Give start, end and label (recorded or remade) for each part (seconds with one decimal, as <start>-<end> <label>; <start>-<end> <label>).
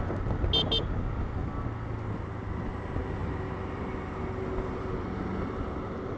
0.0-6.2 recorded